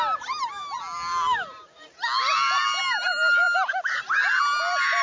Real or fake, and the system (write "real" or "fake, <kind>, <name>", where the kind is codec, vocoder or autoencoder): real